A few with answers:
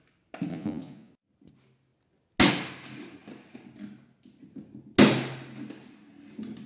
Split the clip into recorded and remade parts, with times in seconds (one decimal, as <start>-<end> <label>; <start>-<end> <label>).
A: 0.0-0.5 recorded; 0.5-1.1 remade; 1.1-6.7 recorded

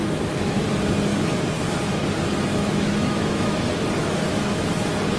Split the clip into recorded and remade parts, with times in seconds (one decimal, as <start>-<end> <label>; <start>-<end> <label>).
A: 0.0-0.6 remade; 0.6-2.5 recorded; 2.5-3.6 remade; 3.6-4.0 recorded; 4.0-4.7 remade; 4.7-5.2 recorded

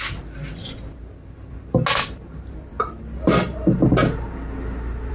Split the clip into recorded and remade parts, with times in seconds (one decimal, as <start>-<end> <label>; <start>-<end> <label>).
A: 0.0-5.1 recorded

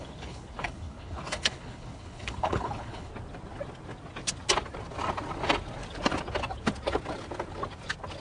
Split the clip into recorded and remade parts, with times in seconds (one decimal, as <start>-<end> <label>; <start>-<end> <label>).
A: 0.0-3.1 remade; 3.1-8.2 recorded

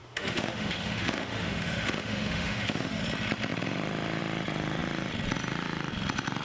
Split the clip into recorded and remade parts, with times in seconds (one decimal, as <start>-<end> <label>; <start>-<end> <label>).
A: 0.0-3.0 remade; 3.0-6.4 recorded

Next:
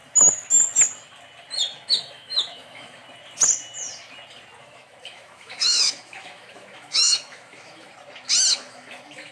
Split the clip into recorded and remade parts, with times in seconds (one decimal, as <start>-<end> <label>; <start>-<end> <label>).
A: 0.0-1.9 recorded; 1.9-3.0 remade; 3.0-4.6 recorded; 4.6-7.9 remade; 7.9-8.5 recorded; 8.5-9.3 remade

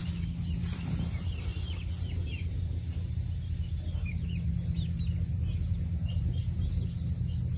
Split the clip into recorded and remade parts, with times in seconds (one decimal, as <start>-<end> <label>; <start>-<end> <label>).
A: 0.0-7.6 recorded

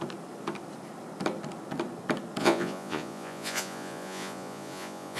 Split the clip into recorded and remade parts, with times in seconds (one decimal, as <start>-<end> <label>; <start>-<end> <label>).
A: 0.0-2.4 recorded; 2.4-5.2 remade